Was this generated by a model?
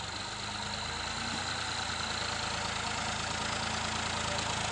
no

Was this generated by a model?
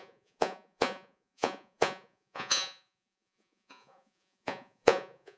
yes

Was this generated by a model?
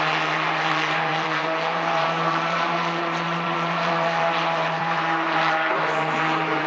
yes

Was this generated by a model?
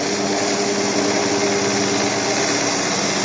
no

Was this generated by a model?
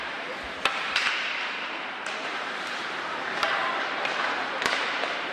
yes